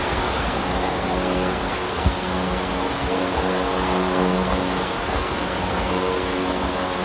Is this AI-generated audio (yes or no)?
yes